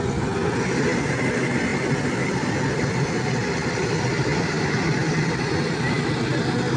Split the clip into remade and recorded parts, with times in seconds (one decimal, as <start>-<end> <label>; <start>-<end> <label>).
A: 0.0-1.7 recorded; 1.7-5.8 remade; 5.8-6.8 recorded